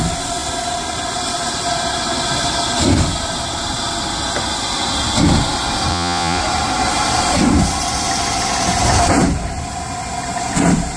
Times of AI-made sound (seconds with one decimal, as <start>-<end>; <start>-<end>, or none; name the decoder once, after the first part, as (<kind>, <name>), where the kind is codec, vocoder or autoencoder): 5.9-6.4 (vocoder, Vocos)